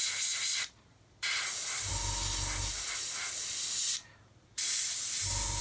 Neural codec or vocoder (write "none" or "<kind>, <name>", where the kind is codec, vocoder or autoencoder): none